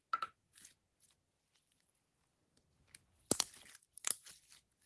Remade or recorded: recorded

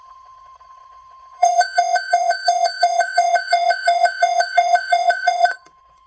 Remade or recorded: remade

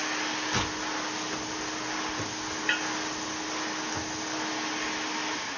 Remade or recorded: recorded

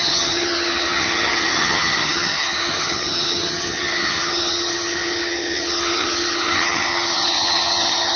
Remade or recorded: remade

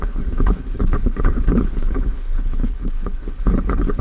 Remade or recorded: remade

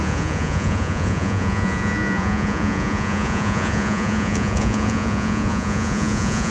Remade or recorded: remade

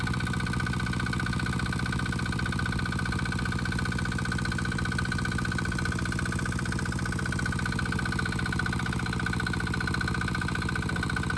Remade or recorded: recorded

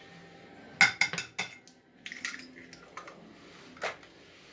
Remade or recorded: recorded